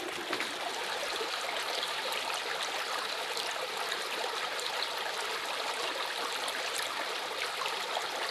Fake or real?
real